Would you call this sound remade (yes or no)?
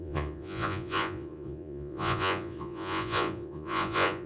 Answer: yes